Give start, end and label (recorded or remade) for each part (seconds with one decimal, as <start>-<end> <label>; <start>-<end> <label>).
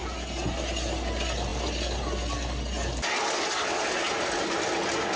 0.0-5.2 recorded